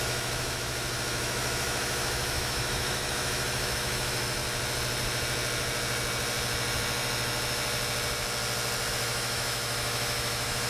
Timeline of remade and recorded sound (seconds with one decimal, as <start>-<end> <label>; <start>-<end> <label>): 0.0-4.4 remade; 4.4-8.9 recorded; 8.9-10.7 remade